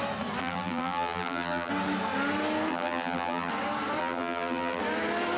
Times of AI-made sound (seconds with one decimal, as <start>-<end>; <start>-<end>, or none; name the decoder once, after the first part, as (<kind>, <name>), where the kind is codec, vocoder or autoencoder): 0.4-1.7 (vocoder, BigVGAN v2); 2.7-3.5; 4.0-4.8